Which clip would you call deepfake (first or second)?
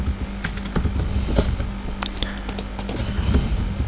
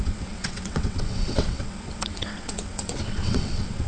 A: second